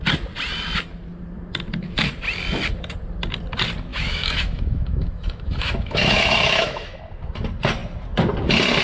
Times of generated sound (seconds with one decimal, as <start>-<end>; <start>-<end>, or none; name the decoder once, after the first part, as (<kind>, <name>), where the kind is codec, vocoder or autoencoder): 3.9-7.0 (autoencoder, DAC-VAE)

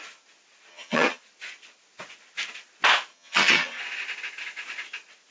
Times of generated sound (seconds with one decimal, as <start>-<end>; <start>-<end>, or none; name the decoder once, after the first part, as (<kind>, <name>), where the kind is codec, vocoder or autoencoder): 0.7-1.2 (vocoder, HiFi-GAN); 3.1-3.8